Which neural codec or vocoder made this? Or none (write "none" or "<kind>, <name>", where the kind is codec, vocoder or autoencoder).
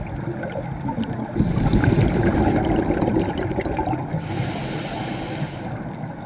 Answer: none